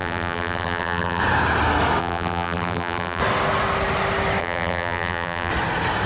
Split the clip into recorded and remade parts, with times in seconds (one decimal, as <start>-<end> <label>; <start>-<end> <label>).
0.0-1.2 remade; 1.2-2.0 recorded; 2.0-3.2 remade; 3.2-4.4 recorded; 4.4-5.5 remade; 5.5-6.1 recorded